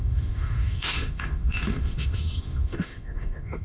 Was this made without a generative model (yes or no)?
no